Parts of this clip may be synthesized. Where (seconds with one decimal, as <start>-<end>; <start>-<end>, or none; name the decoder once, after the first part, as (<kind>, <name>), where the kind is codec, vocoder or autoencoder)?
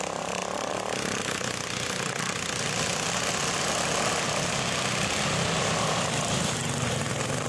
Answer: none